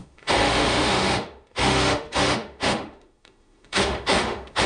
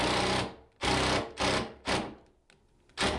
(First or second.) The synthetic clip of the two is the first